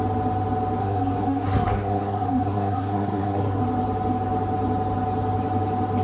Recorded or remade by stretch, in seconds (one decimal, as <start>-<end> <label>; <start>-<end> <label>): 0.0-0.8 recorded; 0.8-3.6 remade; 3.6-6.0 recorded